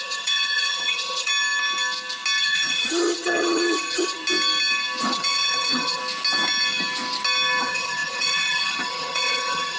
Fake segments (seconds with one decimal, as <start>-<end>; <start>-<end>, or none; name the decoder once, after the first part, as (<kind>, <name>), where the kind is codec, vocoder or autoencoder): 0.0-1.3 (vocoder, HiFi-GAN); 2.4-4.2; 5.0-6.0; 7.6-9.8